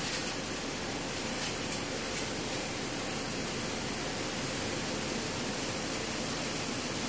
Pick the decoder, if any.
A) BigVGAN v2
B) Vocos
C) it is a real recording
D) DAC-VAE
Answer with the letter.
C